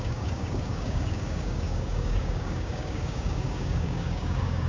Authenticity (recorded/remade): remade